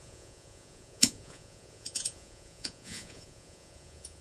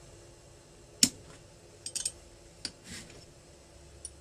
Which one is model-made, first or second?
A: first